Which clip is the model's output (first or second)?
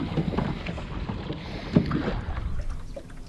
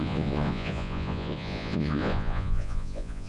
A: second